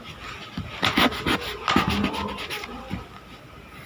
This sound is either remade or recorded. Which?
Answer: recorded